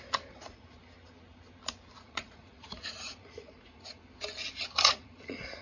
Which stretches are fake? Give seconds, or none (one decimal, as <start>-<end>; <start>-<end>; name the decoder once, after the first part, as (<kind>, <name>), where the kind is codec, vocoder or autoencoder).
0.0-0.8 (vocoder, Vocos); 2.0-4.0; 4.5-5.6